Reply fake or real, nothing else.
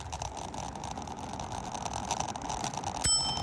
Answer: real